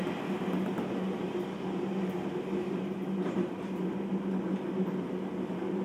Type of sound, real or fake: real